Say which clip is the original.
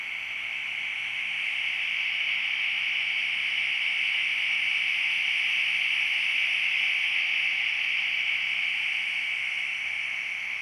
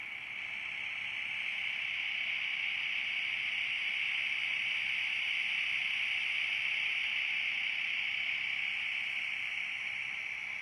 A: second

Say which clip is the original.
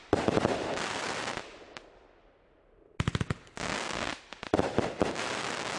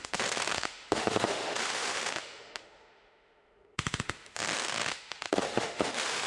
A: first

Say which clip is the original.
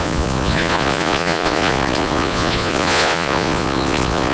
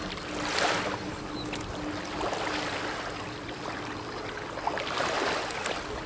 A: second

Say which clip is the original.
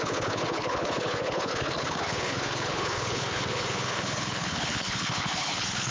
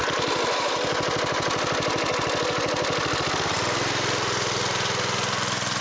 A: second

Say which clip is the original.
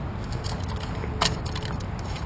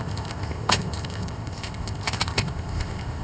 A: first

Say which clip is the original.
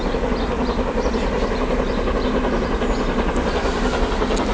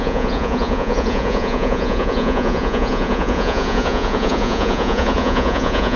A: first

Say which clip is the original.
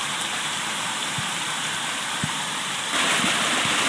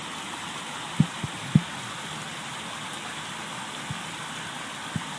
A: second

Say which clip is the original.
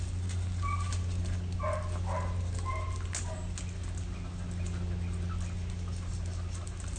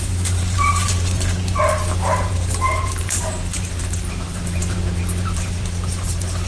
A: first